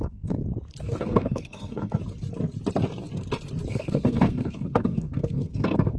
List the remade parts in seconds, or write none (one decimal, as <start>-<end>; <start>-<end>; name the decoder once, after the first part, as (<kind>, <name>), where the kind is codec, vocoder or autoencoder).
0.0-0.4 (codec, SNAC); 1.0-2.0; 3.7-6.0